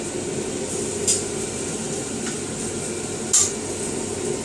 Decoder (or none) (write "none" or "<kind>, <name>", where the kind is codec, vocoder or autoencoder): none